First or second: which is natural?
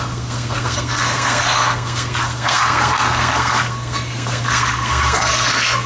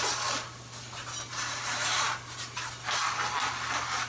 second